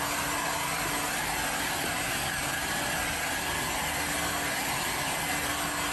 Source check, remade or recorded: recorded